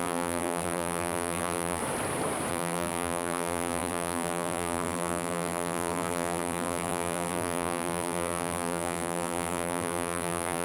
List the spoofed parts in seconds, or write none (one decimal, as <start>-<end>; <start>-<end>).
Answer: 0.0-1.8; 2.5-10.6

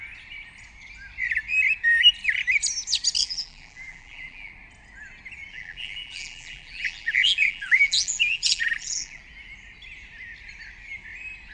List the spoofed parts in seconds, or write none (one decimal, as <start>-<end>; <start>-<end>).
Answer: 3.2-4.5; 5.5-9.2

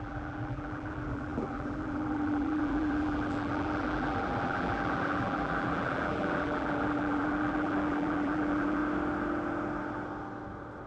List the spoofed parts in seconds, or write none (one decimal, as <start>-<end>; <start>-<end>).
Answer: 0.0-8.8

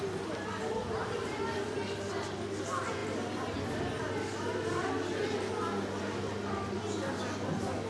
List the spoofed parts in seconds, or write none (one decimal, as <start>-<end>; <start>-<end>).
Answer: 0.8-1.3

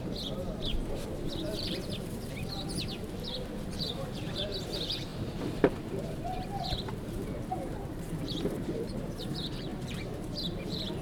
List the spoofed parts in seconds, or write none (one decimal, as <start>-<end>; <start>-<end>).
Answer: 0.0-11.0

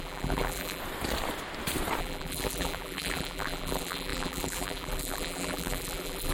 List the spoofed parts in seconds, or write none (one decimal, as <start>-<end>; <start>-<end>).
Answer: 0.0-0.8; 2.0-6.3

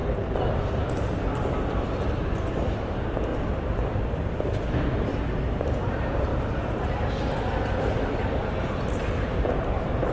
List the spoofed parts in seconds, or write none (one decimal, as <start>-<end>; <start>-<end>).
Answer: 0.8-3.3; 5.8-6.3; 7.8-10.1

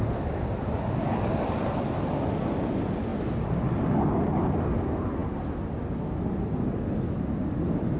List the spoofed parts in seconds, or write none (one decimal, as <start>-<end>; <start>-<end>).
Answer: none